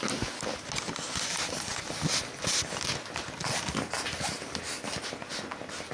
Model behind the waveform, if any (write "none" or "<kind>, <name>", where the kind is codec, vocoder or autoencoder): none